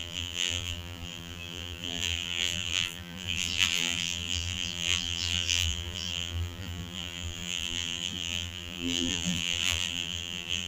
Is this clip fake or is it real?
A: fake